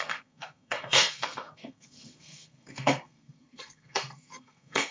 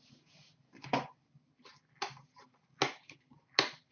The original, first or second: second